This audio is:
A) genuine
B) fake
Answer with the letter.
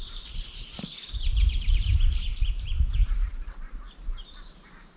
B